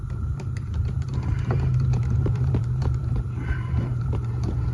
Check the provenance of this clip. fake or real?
fake